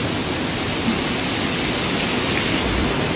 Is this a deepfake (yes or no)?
no